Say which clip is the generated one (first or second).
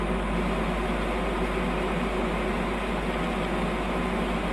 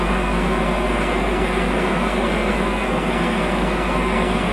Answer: second